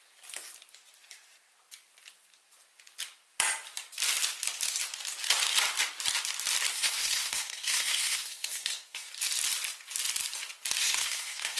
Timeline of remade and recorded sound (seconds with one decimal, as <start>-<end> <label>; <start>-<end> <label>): 0.0-6.7 recorded; 6.7-9.1 remade; 9.1-10.8 recorded; 10.8-11.6 remade